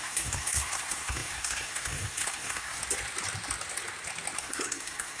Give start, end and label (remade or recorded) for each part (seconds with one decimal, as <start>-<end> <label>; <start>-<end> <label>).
0.0-2.8 remade; 2.8-4.4 recorded; 4.4-5.2 remade